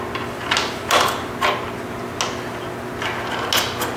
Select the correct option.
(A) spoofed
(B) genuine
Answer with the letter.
B